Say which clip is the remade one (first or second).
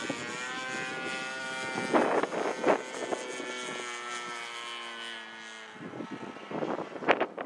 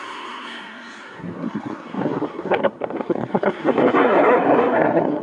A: second